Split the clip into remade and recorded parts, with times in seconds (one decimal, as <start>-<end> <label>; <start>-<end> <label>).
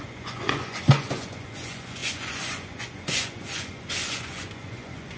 0.0-5.2 remade